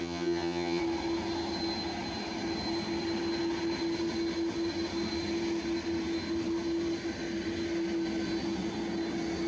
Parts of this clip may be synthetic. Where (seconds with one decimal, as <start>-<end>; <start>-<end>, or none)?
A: 0.0-0.8